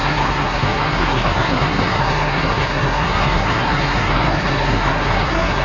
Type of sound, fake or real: fake